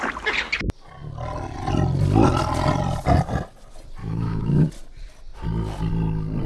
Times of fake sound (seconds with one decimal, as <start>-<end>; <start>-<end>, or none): 4.0-4.7